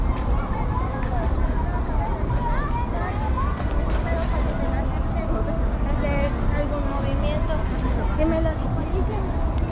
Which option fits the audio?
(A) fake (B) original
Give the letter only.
B